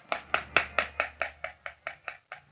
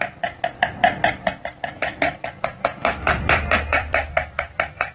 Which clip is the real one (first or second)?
first